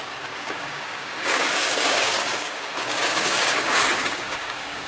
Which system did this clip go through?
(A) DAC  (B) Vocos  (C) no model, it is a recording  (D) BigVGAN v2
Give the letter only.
A